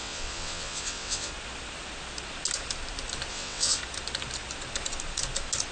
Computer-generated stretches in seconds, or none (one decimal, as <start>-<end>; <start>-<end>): 0.0-1.3; 3.3-3.8